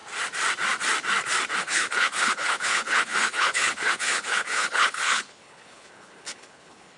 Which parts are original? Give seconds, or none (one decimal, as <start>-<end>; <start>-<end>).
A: 0.0-1.6